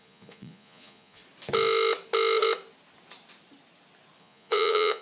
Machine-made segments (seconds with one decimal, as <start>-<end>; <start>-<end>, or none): 0.0-1.2; 4.2-5.0